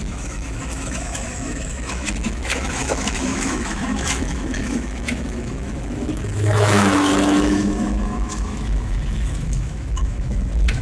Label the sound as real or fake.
fake